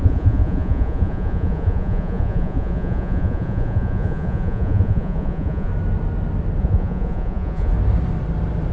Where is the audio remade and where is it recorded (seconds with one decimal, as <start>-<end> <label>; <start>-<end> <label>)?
0.0-5.7 remade; 5.7-6.6 recorded; 6.6-7.7 remade; 7.7-8.7 recorded